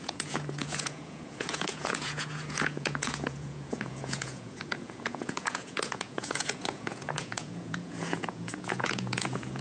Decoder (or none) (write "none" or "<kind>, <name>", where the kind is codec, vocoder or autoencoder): vocoder, Vocos